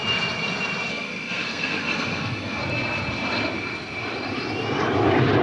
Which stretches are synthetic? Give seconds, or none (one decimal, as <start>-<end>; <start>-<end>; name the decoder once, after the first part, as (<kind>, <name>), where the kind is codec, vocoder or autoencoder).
0.9-2.6 (codec, SNAC)